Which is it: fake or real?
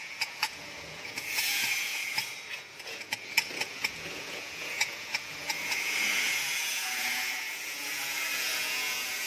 fake